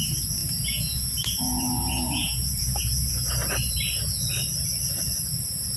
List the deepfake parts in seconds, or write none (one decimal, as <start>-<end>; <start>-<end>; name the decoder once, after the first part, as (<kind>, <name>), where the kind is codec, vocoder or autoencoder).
0.4-3.3 (vocoder, Vocos)